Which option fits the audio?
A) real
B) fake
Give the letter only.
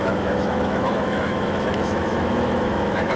B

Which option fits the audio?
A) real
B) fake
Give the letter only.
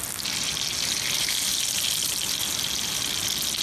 A